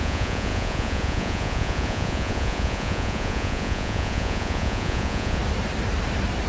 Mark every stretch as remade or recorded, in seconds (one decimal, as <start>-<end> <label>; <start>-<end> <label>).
0.0-5.4 remade; 5.4-6.5 recorded